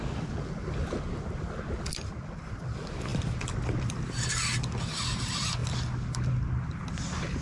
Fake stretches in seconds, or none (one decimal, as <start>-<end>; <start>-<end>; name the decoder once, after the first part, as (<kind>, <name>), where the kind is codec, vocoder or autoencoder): none

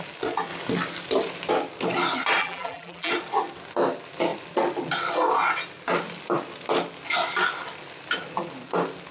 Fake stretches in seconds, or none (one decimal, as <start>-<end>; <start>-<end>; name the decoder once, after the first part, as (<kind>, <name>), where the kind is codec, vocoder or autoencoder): 2.4-3.1 (vocoder, BigVGAN v2)

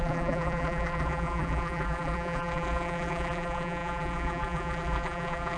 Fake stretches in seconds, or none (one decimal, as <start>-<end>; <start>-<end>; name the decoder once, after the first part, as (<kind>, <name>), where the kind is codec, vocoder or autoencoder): 0.0-5.6 (vocoder, BigVGAN v2)